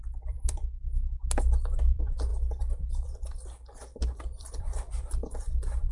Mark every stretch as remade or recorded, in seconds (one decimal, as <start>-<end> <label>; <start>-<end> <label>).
0.0-0.8 remade; 0.8-1.8 recorded; 1.8-5.9 remade